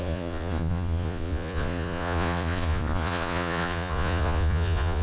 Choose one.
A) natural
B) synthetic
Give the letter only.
B